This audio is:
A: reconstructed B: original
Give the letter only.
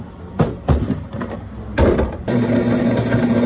B